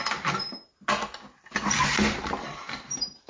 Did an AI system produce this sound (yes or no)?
no